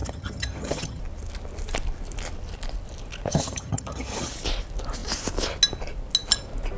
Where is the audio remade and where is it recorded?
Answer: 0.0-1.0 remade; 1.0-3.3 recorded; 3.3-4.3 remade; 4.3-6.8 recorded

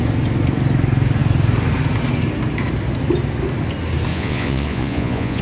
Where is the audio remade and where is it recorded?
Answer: 0.0-4.1 recorded; 4.1-5.4 remade